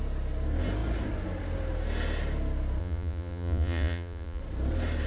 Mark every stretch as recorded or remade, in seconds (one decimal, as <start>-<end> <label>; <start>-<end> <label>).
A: 0.0-2.8 recorded; 2.8-4.4 remade; 4.4-5.1 recorded